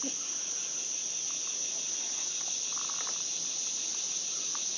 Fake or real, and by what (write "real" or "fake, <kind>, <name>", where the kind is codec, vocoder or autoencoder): real